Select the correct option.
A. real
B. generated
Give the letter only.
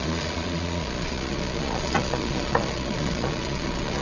B